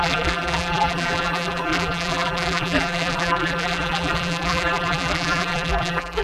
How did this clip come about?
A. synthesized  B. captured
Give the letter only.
A